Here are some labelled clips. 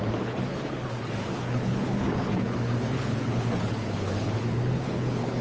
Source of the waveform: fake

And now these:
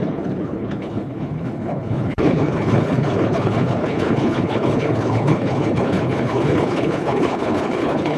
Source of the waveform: fake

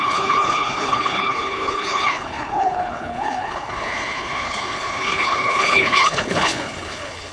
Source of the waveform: fake